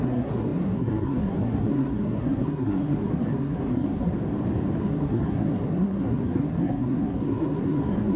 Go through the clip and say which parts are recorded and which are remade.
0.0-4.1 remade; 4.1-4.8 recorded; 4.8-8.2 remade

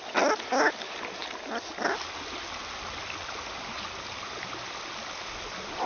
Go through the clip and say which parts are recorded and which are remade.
0.0-5.9 recorded

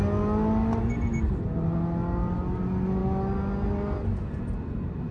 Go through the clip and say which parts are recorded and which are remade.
0.0-5.1 recorded

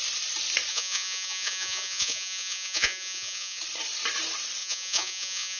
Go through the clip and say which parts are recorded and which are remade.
0.0-0.7 recorded; 0.7-3.6 remade; 3.6-4.6 recorded; 4.6-5.6 remade

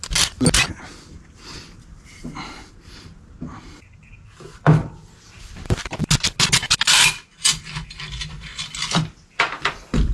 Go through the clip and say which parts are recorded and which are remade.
0.0-4.8 recorded; 4.8-6.1 remade; 6.1-8.5 recorded; 8.5-10.1 remade

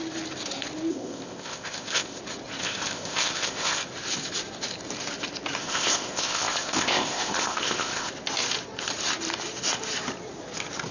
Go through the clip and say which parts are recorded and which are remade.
0.0-0.9 recorded; 0.9-2.2 remade; 2.2-2.6 recorded; 2.6-3.8 remade; 3.8-5.6 recorded; 5.6-8.1 remade; 8.1-10.9 recorded